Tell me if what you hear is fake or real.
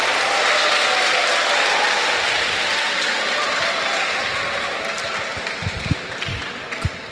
real